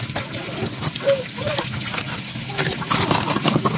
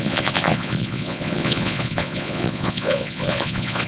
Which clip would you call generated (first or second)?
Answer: second